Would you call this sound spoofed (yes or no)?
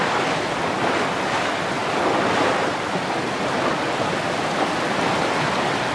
no